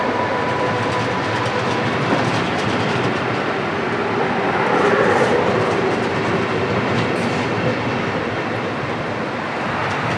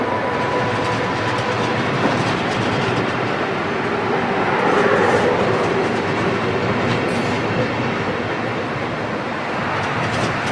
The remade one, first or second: first